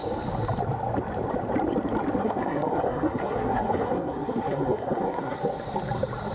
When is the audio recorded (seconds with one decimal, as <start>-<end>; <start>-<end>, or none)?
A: 0.0-2.2; 5.4-6.3